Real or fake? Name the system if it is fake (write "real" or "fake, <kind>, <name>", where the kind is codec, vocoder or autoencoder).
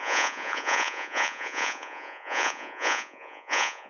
fake, vocoder, Vocos